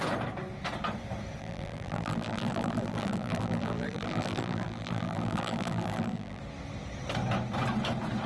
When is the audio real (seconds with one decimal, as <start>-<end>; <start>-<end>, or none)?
0.0-1.4; 6.4-8.3